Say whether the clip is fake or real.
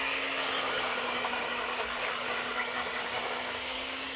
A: fake